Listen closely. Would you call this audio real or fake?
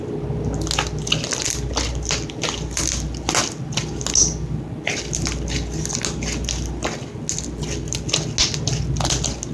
real